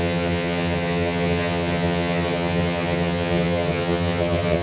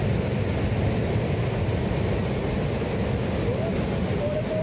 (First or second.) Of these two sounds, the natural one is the second